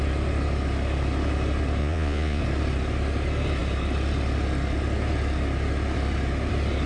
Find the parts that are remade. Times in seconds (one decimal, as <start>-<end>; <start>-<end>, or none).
1.8-2.4